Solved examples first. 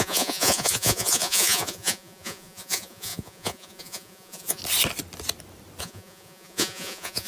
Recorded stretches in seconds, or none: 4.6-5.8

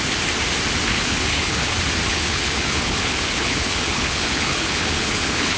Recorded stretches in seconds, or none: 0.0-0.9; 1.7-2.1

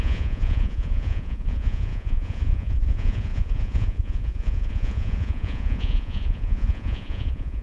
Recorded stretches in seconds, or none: none